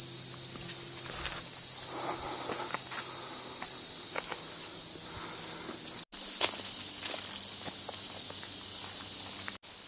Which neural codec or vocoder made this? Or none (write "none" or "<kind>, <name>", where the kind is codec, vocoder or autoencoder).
none